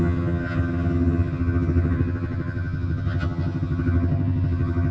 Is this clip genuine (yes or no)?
no